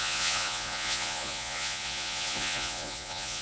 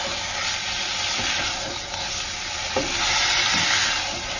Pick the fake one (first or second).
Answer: first